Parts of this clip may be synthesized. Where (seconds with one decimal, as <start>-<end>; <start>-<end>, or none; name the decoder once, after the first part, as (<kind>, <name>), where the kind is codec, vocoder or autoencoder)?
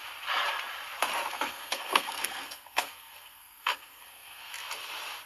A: 1.3-4.5 (codec, SNAC)